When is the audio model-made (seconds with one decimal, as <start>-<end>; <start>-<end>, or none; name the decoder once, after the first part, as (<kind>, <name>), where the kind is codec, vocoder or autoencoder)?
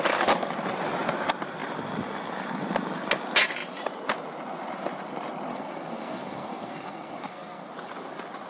5.5-7.7 (codec, SNAC)